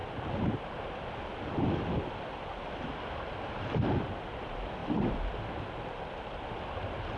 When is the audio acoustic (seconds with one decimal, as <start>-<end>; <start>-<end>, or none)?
0.0-2.6; 4.8-6.1